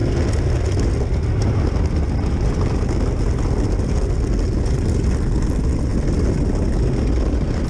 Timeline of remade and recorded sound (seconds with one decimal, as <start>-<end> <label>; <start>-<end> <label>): 0.0-7.7 recorded